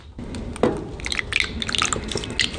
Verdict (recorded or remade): recorded